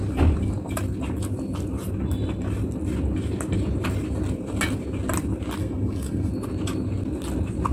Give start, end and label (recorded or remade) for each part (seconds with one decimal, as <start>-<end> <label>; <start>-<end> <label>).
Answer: 0.0-5.6 recorded; 5.6-6.3 remade; 6.3-7.7 recorded